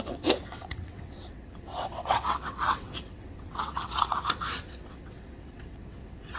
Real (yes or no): no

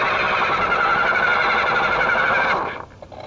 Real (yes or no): yes